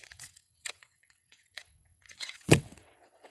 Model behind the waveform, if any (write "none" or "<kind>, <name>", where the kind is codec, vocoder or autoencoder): vocoder, WaveNeXt